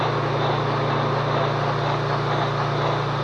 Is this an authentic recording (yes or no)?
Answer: yes